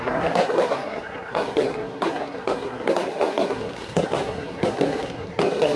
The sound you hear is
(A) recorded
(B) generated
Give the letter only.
B